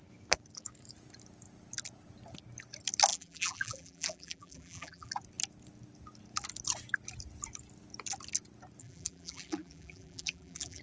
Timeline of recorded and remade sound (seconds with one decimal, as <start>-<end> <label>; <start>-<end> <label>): 0.0-3.1 recorded; 3.1-5.1 remade; 5.1-8.8 recorded; 8.8-10.8 remade